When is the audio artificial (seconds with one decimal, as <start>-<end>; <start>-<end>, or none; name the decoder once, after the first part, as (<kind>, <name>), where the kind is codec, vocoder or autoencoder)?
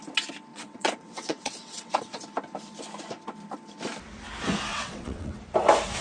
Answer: 0.5-2.0 (vocoder, WaveNeXt); 4.7-5.4